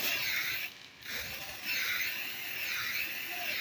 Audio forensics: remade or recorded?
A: recorded